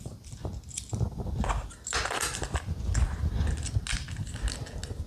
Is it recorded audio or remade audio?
recorded